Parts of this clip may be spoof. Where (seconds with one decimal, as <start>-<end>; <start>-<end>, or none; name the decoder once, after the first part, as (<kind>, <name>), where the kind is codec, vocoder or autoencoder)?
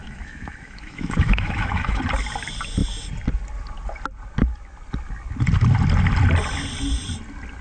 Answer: 0.0-2.0 (autoencoder, DAC-VAE)